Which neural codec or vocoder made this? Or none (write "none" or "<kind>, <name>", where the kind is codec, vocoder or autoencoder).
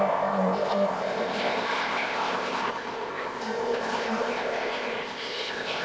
codec, ZipCodec